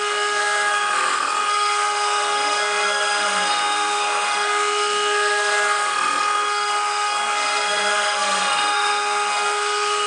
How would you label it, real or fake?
fake